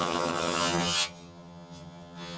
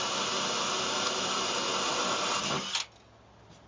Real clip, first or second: second